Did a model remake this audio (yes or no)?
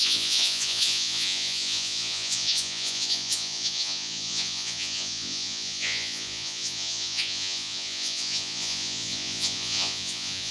yes